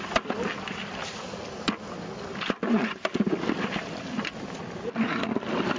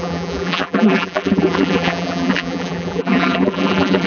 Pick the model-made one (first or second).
second